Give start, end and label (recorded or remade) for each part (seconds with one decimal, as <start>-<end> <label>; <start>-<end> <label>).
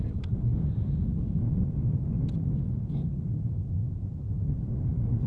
0.0-5.3 recorded